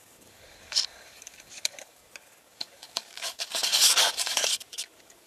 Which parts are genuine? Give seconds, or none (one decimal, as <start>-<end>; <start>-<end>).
none